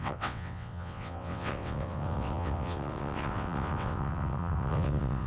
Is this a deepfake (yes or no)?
yes